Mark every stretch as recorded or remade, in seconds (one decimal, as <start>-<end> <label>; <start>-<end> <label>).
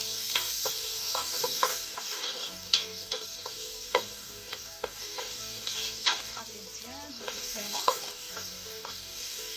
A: 0.0-6.4 remade; 6.4-7.1 recorded; 7.1-9.6 remade